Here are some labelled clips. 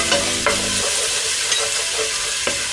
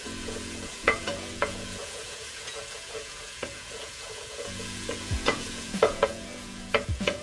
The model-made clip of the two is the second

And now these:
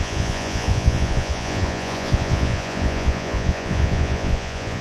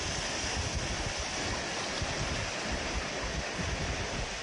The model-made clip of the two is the first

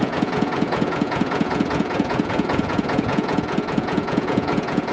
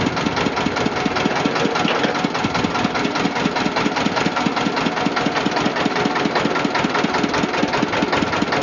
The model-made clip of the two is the first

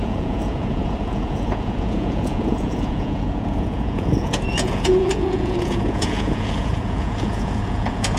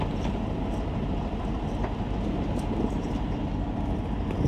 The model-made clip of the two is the first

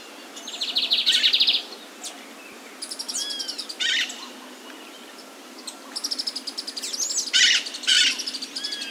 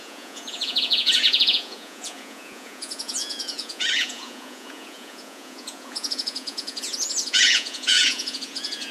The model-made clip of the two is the second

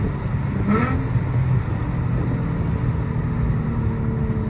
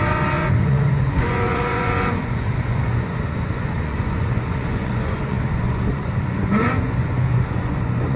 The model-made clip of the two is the second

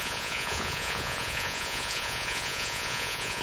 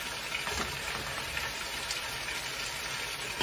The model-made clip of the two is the first